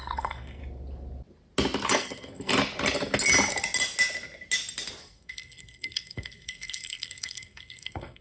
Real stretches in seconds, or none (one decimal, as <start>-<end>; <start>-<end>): 0.6-1.9; 2.5-5.0